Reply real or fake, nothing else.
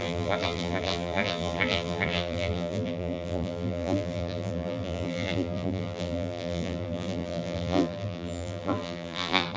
fake